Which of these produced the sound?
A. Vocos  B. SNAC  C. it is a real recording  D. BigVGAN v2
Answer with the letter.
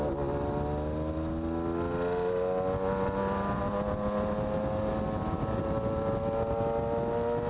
C